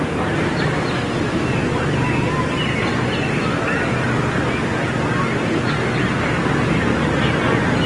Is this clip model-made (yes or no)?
no